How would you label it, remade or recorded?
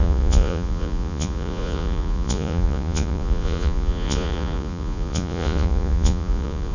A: remade